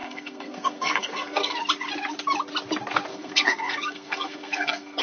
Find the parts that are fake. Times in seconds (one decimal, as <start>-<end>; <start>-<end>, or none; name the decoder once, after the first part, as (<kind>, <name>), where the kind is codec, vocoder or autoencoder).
0.0-1.6 (codec, SNAC); 3.1-5.0